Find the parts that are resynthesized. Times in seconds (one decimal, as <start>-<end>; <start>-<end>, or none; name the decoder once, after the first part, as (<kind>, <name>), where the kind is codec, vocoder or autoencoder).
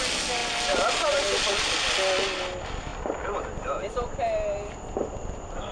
none